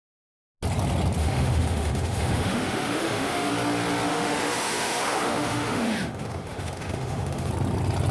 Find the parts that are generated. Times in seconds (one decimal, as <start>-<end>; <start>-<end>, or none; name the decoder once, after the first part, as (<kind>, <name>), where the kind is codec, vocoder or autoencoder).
1.2-3.5 (autoencoder, DAC-VAE); 4.1-7.5